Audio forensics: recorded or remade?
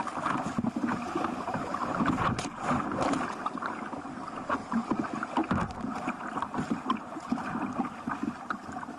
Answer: recorded